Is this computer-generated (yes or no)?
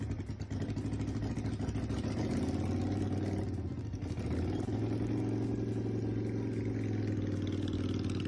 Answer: no